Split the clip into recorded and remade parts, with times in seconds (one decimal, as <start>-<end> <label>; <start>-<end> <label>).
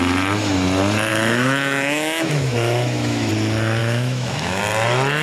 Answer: 0.0-1.1 recorded; 1.1-3.3 remade; 3.3-3.8 recorded; 3.8-4.6 remade; 4.6-5.2 recorded